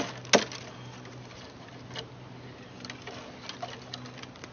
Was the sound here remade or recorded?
recorded